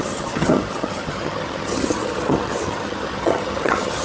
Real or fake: fake